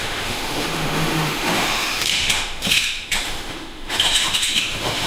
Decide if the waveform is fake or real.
fake